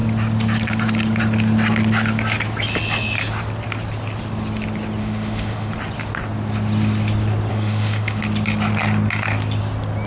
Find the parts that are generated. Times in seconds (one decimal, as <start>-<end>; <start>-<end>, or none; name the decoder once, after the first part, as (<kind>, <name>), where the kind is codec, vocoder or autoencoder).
5.0-5.7 (autoencoder, DAC-VAE); 7.5-8.2